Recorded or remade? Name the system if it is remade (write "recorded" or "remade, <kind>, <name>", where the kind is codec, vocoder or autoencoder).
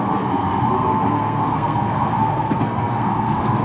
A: remade, codec, SNAC